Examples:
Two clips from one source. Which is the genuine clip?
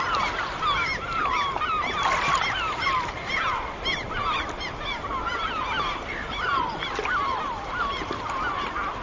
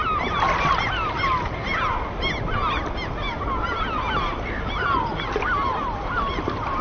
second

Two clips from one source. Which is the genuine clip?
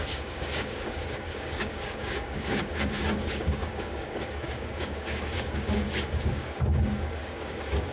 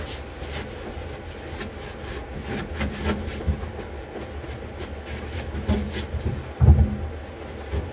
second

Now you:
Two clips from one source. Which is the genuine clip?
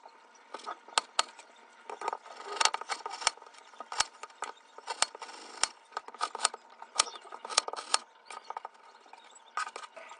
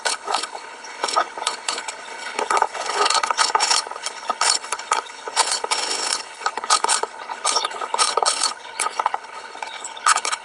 first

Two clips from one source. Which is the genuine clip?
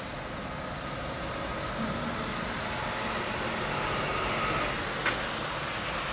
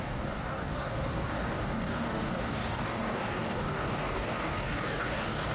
first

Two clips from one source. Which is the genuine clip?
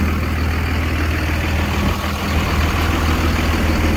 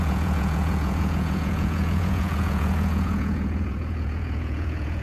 first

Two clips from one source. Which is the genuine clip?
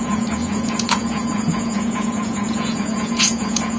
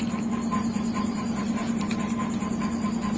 second